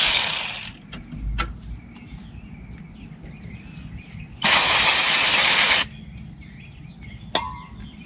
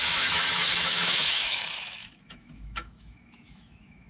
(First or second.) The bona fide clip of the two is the first